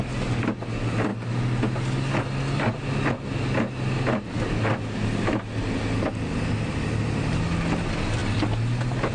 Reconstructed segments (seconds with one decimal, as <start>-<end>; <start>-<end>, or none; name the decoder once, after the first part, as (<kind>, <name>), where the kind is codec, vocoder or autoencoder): none